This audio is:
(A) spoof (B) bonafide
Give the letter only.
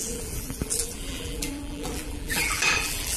A